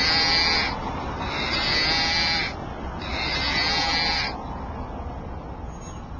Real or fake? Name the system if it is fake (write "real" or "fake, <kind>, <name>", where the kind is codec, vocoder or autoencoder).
real